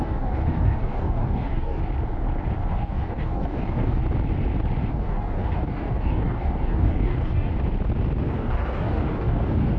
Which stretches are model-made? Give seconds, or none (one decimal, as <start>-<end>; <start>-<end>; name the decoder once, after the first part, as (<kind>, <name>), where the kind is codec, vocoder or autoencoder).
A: 0.0-1.8 (codec, DAC); 2.7-4.0; 4.9-7.5; 8.3-9.8